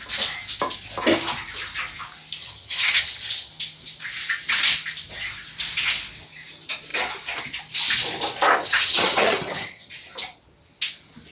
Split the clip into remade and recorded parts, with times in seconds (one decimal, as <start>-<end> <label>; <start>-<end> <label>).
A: 0.0-2.4 recorded; 2.4-3.5 remade; 3.5-8.6 recorded; 8.6-9.9 remade; 9.9-11.3 recorded